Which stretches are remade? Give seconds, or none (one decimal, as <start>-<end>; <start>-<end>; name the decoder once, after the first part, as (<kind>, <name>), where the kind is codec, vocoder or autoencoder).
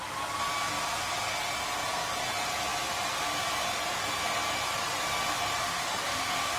5.6-6.6 (autoencoder, DAC-VAE)